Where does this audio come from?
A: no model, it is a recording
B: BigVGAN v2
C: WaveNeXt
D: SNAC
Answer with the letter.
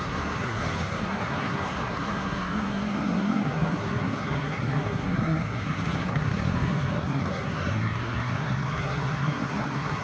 D